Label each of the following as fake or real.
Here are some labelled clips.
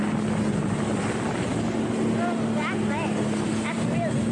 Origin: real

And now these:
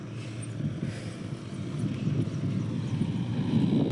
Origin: real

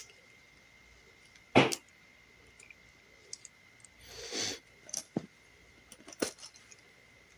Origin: real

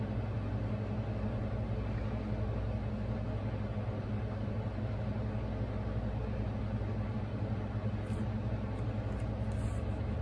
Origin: real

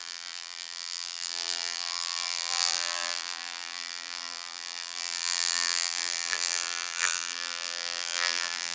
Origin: fake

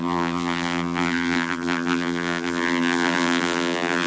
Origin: fake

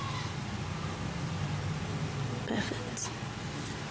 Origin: real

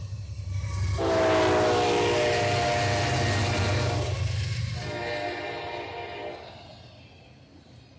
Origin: real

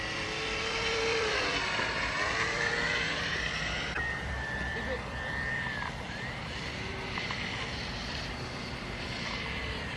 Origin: fake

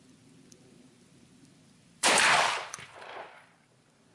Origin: fake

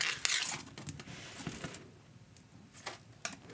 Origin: real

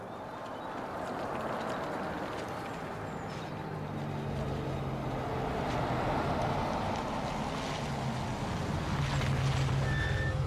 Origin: real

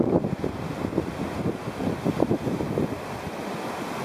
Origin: real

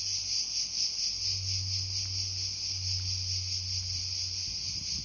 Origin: real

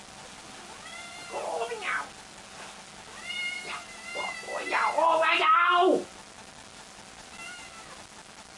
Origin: real